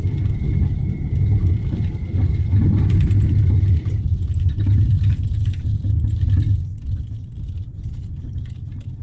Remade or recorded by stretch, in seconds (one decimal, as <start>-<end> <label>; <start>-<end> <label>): 0.0-3.8 recorded; 3.8-5.5 remade; 5.5-6.7 recorded; 6.7-8.2 remade; 8.2-9.0 recorded